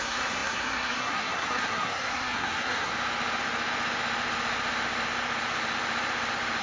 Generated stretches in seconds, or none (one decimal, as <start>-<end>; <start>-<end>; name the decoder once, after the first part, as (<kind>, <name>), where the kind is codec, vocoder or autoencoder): 0.0-2.9 (codec, SNAC)